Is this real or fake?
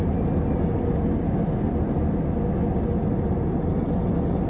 real